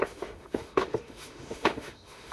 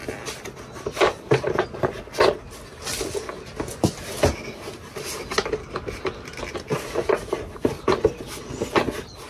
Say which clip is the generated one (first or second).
first